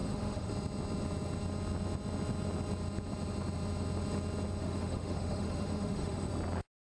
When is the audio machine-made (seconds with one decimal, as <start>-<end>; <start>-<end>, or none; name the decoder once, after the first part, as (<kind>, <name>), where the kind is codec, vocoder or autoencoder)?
0.0-0.5 (autoencoder, DAC-VAE); 4.6-6.3